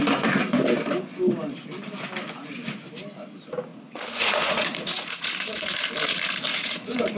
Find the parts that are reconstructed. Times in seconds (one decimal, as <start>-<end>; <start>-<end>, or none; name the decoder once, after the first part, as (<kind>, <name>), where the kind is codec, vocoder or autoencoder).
3.7-5.9 (vocoder, Vocos); 6.5-7.2